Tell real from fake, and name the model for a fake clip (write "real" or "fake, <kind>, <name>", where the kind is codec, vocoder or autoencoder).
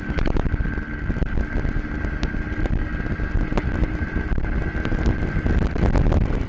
real